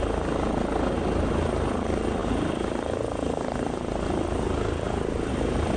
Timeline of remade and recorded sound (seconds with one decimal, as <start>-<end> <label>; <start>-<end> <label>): 0.0-2.2 recorded; 2.2-5.8 remade